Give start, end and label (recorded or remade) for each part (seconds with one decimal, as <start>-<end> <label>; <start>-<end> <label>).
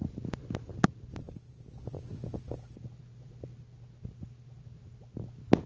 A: 0.0-5.7 recorded